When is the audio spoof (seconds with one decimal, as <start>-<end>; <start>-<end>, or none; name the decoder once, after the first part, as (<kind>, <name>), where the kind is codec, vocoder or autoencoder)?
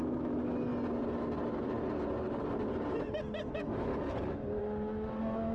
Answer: 0.0-0.7 (autoencoder, DAC-VAE); 3.5-3.9; 4.6-5.5